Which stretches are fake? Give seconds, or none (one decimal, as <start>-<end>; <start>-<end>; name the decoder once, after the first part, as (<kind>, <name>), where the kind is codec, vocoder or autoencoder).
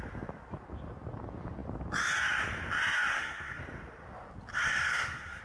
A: 3.1-3.6 (codec, SNAC); 4.5-5.4